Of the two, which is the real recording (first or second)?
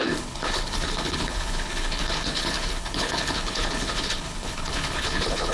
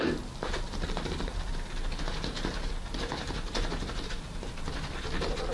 second